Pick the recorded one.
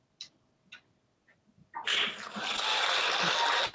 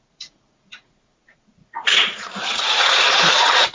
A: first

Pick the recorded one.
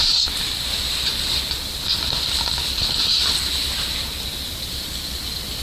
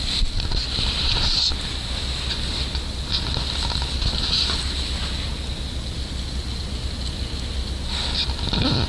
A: second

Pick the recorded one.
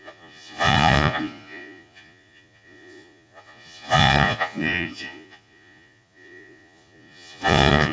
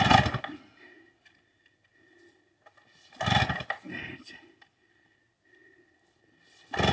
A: second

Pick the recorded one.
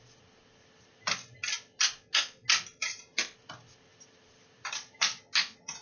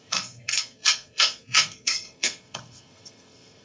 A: first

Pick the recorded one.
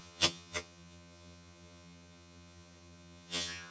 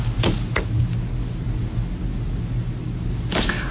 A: second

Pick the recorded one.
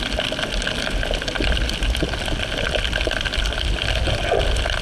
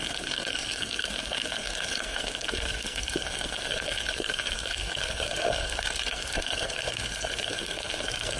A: first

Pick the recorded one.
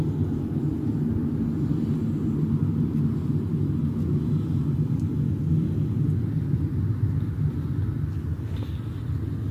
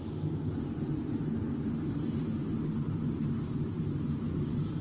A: first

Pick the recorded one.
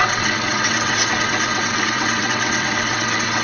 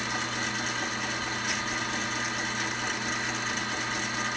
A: second